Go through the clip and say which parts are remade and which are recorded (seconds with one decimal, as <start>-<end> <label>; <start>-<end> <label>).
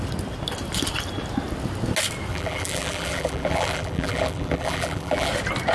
0.0-2.3 recorded; 2.3-5.3 remade; 5.3-5.7 recorded